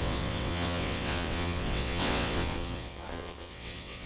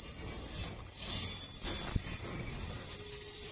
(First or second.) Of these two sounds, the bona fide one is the second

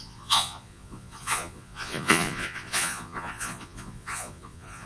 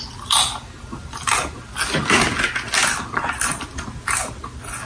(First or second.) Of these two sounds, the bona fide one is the second